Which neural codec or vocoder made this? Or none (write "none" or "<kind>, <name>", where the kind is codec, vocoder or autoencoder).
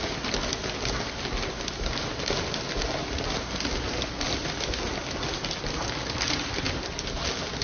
none